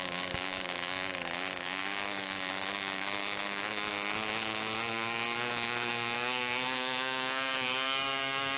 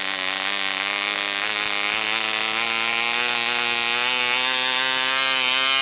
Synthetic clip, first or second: first